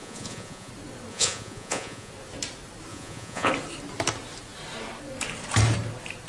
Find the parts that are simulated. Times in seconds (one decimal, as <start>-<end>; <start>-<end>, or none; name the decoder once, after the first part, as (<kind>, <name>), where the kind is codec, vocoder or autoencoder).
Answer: 0.0-0.7 (vocoder, Vocos); 1.1-2.1; 2.9-3.5